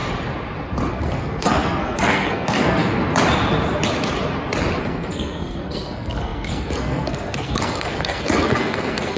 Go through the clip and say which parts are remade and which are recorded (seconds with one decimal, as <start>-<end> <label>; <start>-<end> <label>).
0.0-0.9 recorded; 0.9-3.0 remade; 3.0-4.8 recorded; 4.8-9.2 remade